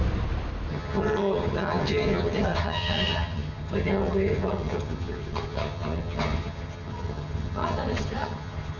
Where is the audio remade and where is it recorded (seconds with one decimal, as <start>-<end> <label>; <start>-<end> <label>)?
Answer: 0.0-0.7 recorded; 0.7-8.8 remade